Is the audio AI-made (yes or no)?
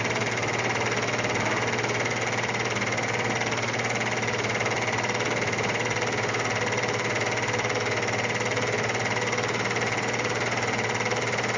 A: no